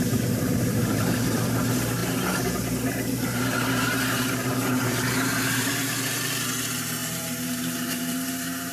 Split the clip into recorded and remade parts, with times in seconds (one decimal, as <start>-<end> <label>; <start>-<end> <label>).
0.0-4.4 recorded; 4.4-5.7 remade; 5.7-7.0 recorded; 7.0-8.7 remade